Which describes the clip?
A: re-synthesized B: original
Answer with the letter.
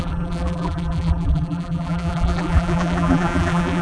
A